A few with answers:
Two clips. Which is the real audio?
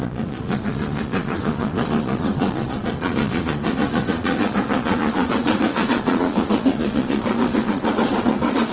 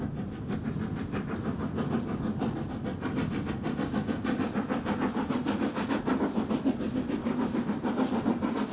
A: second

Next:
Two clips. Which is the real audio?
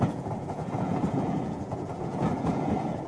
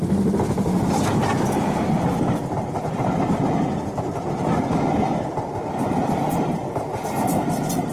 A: second